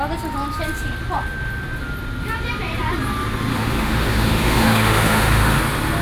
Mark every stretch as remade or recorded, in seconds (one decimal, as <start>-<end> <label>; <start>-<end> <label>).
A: 0.0-3.5 recorded; 3.5-5.6 remade; 5.6-6.0 recorded